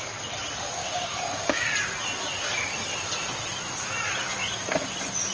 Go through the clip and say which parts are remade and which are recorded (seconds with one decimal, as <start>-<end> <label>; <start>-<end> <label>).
0.0-0.8 recorded; 0.8-1.7 remade; 1.7-5.3 recorded